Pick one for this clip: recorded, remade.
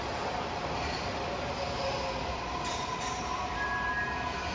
recorded